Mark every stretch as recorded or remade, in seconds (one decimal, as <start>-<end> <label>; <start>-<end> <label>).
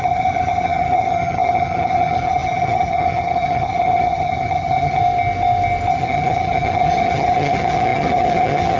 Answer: 0.0-5.0 remade; 5.0-5.9 recorded; 5.9-8.8 remade